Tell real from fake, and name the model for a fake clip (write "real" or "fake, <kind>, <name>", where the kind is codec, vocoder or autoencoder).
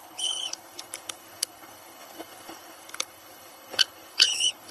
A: fake, codec, HILCodec